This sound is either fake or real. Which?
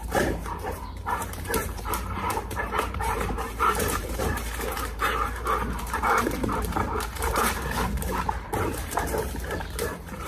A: fake